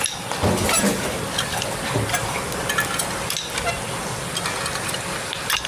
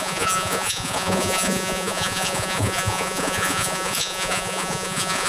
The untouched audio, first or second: first